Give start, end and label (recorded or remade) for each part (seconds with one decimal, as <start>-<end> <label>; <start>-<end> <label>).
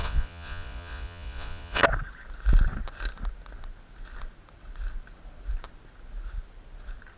0.0-1.8 remade; 1.8-7.2 recorded